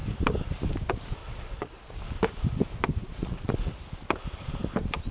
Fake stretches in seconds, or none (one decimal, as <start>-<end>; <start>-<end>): 1.2-2.0; 3.0-3.7